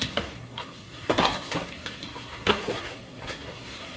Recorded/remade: remade